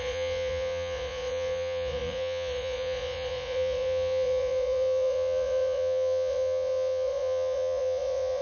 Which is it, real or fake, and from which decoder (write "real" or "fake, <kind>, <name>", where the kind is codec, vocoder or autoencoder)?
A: fake, vocoder, Vocos